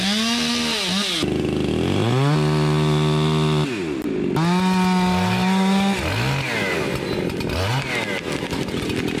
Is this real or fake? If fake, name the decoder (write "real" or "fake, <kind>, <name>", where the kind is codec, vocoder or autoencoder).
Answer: real